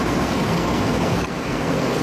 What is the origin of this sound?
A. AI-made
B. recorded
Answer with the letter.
A